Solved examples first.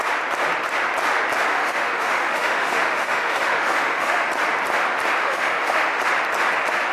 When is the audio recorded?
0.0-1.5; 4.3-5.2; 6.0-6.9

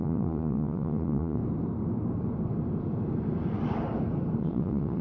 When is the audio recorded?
1.4-4.4

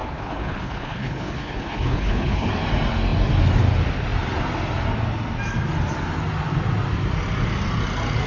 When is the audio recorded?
2.5-8.3

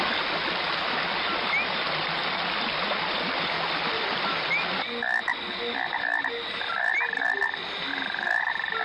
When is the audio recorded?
0.0-8.8

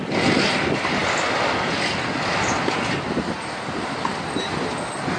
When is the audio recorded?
0.0-5.2

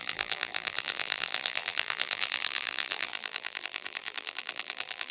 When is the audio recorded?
none

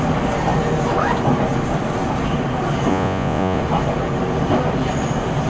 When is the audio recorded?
0.0-2.9; 3.6-5.5

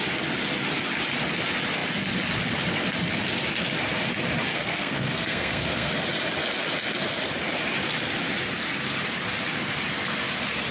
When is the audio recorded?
0.0-4.5; 5.9-10.7